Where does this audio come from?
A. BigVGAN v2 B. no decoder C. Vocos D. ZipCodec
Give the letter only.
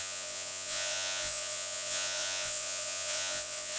C